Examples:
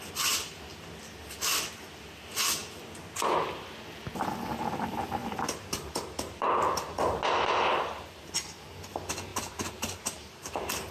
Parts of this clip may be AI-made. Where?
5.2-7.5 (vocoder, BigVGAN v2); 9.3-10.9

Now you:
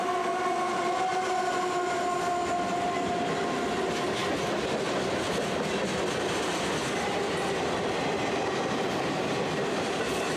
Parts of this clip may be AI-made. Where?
none

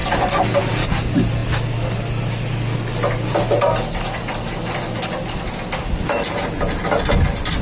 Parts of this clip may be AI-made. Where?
none

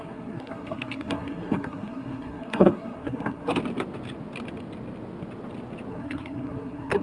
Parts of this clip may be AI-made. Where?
0.0-3.6 (codec, SNAC); 5.9-7.0

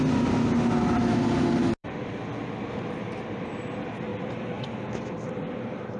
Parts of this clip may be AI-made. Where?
1.8-2.7 (vocoder, BigVGAN v2); 4.1-5.5

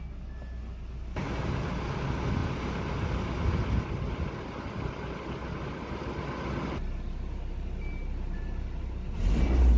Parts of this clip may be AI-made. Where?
none

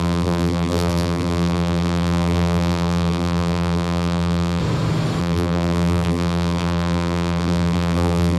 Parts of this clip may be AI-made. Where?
0.0-4.6 (vocoder, BigVGAN v2); 5.2-8.4